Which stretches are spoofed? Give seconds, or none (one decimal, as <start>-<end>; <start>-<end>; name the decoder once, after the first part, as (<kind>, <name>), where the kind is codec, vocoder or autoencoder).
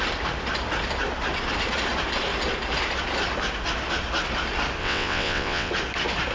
4.8-5.7 (vocoder, WaveNeXt)